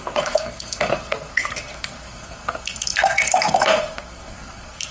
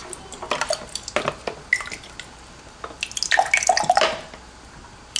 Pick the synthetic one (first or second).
first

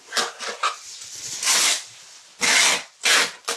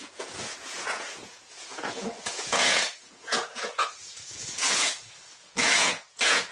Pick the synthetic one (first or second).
second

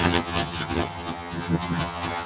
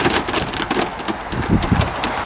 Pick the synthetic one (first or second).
first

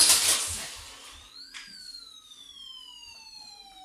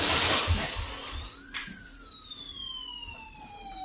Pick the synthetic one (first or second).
second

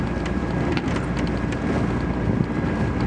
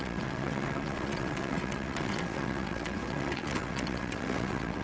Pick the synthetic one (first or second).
second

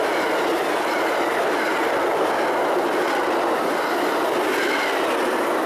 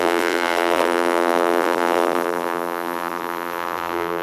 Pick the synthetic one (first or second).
second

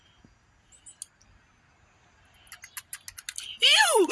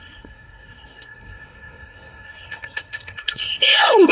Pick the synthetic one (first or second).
second